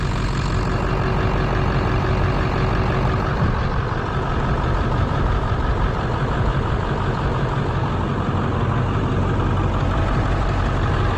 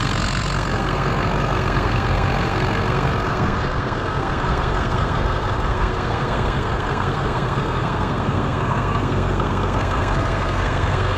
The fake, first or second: second